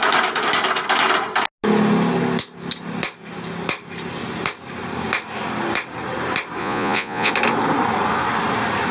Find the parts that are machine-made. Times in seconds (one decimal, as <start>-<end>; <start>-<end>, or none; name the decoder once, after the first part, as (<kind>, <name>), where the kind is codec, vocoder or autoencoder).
6.6-7.3 (vocoder, Vocos)